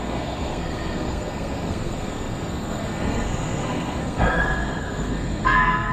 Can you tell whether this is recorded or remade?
remade